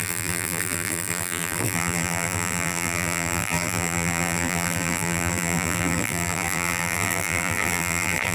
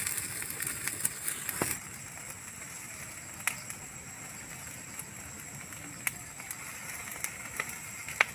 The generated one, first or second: first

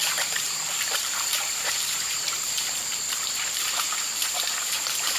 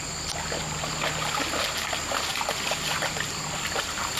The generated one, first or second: first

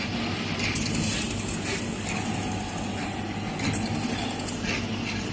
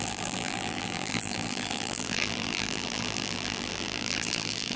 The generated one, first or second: second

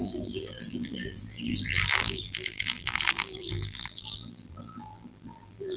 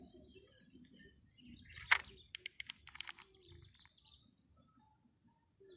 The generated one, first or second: first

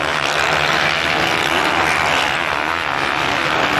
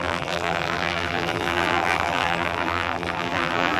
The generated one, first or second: second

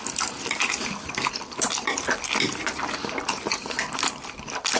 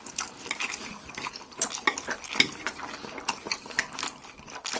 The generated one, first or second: first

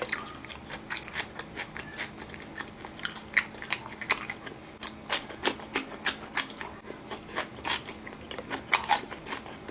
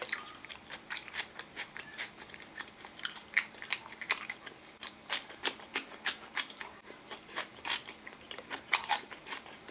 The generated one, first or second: second